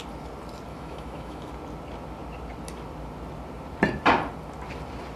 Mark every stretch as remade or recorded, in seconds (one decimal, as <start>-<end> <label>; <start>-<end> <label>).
0.0-0.7 recorded; 0.7-1.5 remade; 1.5-5.2 recorded

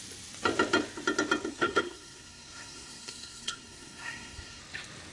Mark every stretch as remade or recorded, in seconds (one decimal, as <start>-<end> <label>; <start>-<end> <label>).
0.0-1.5 recorded; 1.5-4.6 remade; 4.6-5.1 recorded

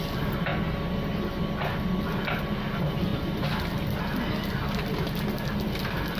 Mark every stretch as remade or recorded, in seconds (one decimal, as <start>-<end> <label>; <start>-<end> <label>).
0.0-6.2 recorded

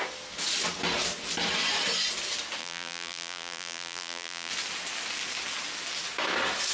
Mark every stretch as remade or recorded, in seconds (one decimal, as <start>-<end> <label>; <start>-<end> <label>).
0.0-2.6 recorded; 2.6-4.5 remade; 4.5-6.7 recorded

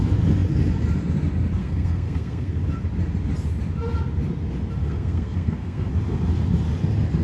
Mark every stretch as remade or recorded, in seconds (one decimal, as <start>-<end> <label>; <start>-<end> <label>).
0.0-1.6 recorded; 1.6-2.6 remade; 2.6-4.8 recorded; 4.8-5.9 remade; 5.9-7.2 recorded

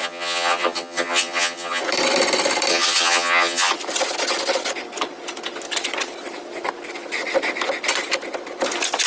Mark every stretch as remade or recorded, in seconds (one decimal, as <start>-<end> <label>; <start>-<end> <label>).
0.0-1.8 remade; 1.8-2.7 recorded; 2.7-3.7 remade; 3.7-9.1 recorded